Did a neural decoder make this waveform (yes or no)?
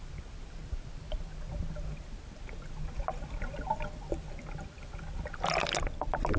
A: no